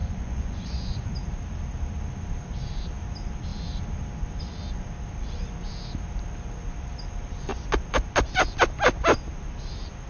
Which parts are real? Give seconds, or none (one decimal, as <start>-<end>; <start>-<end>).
1.1-10.1